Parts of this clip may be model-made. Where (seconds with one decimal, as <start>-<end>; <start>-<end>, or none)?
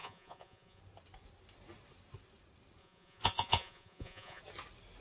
0.0-0.8; 2.8-4.4